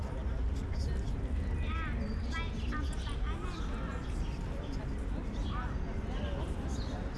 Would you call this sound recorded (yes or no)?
yes